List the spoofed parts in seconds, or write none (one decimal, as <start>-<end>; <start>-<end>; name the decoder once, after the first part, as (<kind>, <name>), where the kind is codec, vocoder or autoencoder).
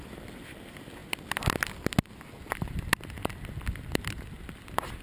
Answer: none